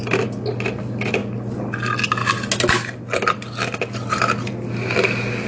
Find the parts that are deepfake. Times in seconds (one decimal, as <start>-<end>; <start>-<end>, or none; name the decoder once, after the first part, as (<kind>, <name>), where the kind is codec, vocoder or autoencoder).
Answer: none